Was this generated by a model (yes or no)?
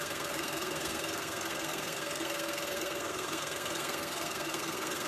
yes